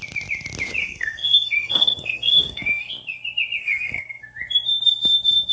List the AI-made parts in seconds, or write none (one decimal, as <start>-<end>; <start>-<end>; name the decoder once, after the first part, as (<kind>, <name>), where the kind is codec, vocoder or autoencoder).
0.8-2.9 (codec, SNAC); 3.6-4.2